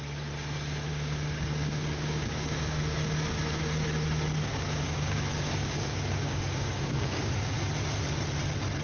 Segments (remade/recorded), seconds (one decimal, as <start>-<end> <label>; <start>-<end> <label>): 0.0-0.9 recorded; 0.9-2.8 remade; 2.8-4.5 recorded; 4.5-7.3 remade; 7.3-8.8 recorded